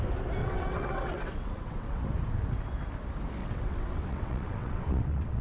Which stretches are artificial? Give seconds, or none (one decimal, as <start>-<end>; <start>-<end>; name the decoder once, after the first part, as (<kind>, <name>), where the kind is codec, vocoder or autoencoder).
0.4-2.0 (vocoder, WaveNeXt); 3.4-5.4